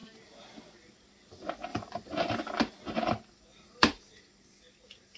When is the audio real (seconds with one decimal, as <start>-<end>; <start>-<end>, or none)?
0.6-1.7; 2.6-3.5; 4.4-5.2